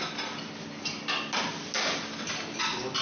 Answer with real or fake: real